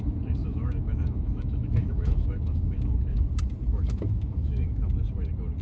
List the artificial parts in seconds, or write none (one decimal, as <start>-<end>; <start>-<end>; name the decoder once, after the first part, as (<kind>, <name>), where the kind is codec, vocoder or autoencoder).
0.4-3.2 (autoencoder, DAC-VAE); 3.7-4.9